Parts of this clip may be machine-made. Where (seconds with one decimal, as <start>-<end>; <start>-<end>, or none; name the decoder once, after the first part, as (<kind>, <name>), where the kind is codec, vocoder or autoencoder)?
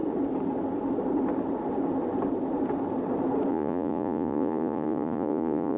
3.5-5.8 (vocoder, Vocos)